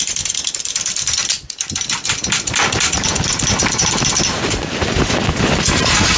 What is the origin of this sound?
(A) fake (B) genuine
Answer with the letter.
A